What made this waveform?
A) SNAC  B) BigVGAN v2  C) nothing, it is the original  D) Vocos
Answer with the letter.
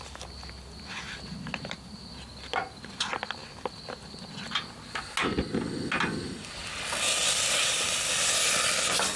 C